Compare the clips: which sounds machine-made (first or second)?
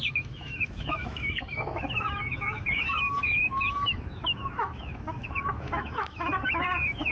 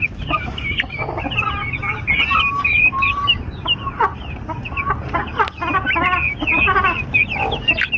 first